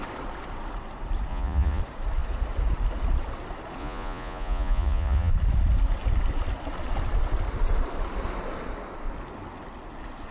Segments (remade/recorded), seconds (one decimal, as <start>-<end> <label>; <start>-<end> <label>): 0.0-1.3 recorded; 1.3-1.8 remade; 1.8-3.8 recorded; 3.8-5.3 remade; 5.3-10.3 recorded